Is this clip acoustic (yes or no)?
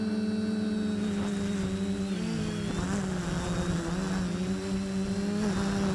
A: yes